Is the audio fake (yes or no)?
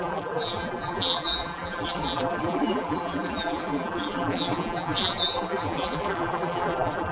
yes